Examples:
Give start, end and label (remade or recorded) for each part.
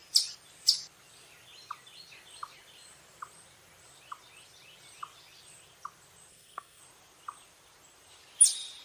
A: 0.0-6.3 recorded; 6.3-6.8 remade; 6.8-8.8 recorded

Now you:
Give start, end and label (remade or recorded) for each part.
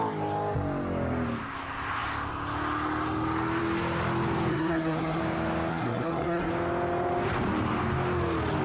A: 0.0-4.5 recorded; 4.5-5.2 remade; 5.2-5.7 recorded; 5.7-6.5 remade; 6.5-8.6 recorded